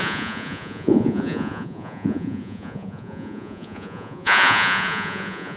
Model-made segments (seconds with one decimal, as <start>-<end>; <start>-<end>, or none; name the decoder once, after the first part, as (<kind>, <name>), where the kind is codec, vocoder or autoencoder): 0.0-5.6 (vocoder, Vocos)